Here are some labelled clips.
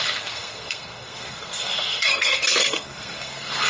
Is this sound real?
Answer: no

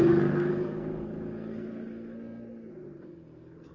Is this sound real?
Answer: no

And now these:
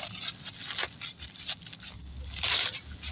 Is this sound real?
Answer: yes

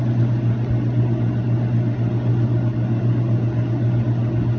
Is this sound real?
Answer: yes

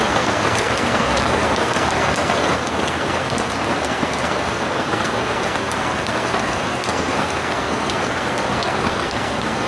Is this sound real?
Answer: no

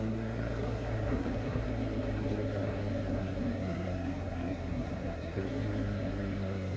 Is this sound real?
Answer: no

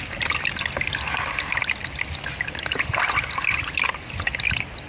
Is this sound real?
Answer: yes